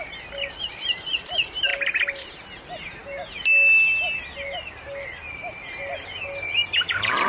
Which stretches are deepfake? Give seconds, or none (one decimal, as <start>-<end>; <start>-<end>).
none